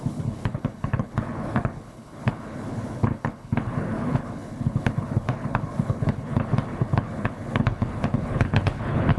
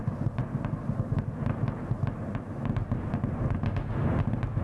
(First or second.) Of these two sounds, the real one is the second